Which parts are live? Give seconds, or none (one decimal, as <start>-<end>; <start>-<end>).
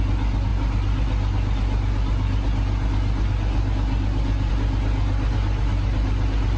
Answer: 0.0-6.6